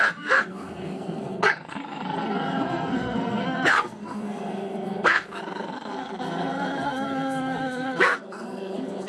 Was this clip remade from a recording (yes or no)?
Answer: yes